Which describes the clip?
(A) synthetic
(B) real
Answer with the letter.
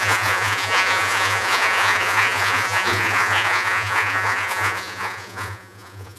A